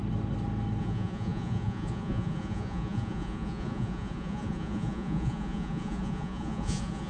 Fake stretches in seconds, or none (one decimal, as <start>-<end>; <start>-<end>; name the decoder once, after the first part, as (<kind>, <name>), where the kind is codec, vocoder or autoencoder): 0.8-7.1 (vocoder, Vocos)